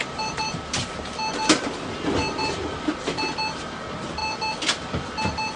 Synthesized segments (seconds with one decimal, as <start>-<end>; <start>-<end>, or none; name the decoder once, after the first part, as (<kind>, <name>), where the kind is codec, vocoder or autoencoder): none